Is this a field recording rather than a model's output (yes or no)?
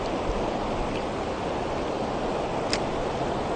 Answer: yes